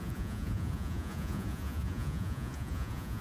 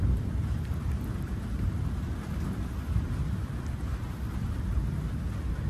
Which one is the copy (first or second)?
first